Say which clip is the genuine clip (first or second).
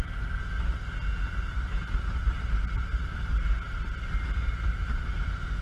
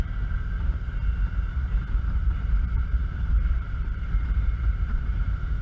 first